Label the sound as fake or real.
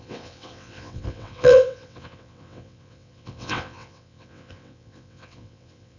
fake